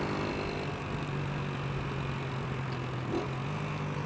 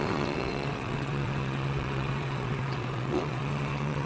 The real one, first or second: first